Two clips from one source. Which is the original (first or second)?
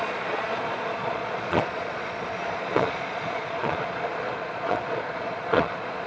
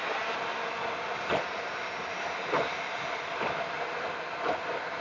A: second